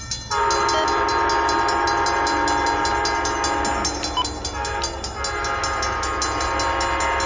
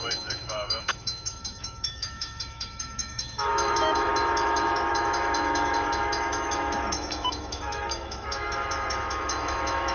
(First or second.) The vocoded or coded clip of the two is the second